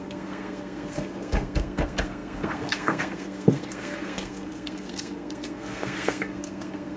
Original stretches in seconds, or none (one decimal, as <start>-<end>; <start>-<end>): none